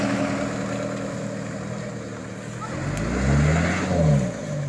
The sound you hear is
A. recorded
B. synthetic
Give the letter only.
A